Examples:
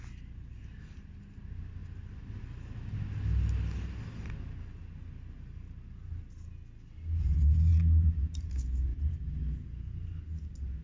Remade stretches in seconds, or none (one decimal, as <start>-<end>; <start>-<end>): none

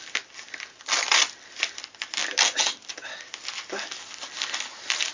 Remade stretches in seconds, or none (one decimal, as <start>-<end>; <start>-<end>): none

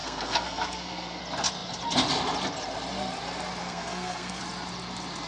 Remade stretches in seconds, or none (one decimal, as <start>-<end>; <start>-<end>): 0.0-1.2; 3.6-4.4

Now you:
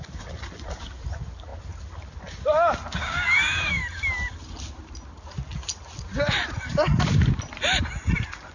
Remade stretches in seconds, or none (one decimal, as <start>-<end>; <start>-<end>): 3.0-3.8